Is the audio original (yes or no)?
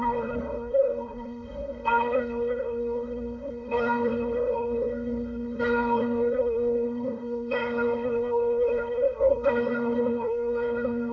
no